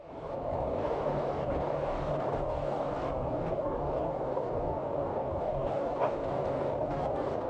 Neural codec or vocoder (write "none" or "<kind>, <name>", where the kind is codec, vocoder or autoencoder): codec, DAC